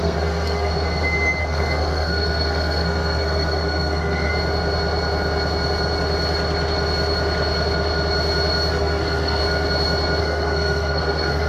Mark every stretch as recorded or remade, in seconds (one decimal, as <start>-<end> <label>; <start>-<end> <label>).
0.0-0.7 remade; 0.7-1.4 recorded; 1.4-4.3 remade; 4.3-8.7 recorded; 8.7-9.4 remade; 9.4-10.2 recorded; 10.2-11.5 remade